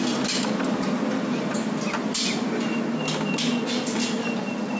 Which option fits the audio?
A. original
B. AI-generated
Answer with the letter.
A